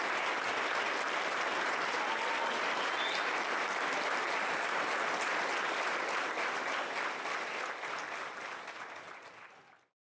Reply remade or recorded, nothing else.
recorded